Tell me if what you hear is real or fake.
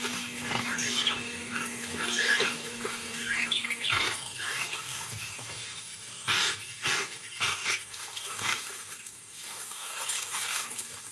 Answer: fake